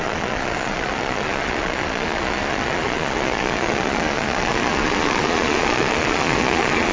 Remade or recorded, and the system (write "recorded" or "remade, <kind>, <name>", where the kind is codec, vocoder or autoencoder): remade, vocoder, Vocos